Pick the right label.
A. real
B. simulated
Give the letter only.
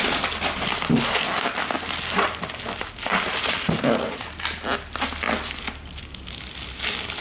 A